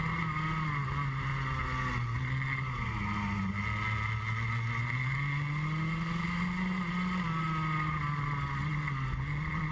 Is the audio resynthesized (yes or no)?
no